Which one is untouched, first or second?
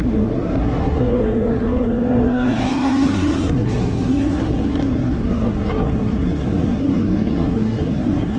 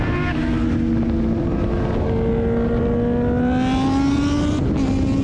second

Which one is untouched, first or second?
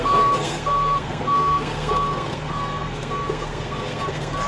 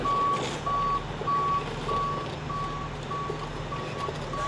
second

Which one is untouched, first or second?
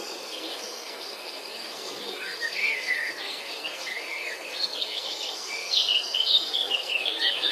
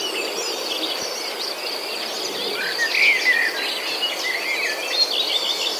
second